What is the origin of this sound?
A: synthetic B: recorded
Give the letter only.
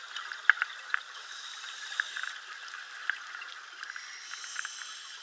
B